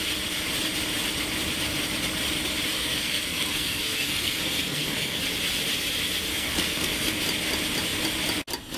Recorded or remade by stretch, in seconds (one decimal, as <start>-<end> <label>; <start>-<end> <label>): 0.0-2.8 recorded; 2.8-5.2 remade; 5.2-6.3 recorded; 6.3-7.2 remade; 7.2-8.8 recorded